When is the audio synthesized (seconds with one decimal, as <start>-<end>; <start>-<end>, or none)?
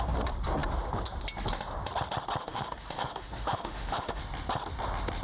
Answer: 2.4-4.2